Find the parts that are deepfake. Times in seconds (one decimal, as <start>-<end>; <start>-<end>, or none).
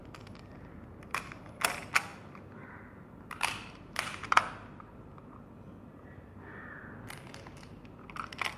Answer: 2.1-3.3